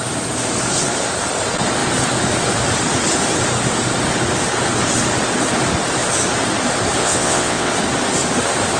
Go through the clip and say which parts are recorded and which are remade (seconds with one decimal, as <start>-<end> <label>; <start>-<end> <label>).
0.0-7.0 recorded; 7.0-7.7 remade; 7.7-8.8 recorded

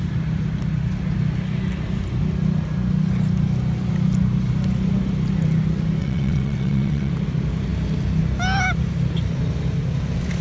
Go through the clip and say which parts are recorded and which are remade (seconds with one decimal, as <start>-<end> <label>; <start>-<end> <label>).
0.0-6.0 recorded; 6.0-7.1 remade; 7.1-10.4 recorded